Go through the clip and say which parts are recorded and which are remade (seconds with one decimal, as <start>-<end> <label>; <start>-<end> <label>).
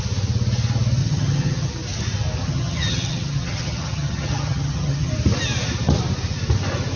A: 0.0-1.0 recorded; 1.0-1.7 remade; 1.7-2.4 recorded; 2.4-5.1 remade; 5.1-7.0 recorded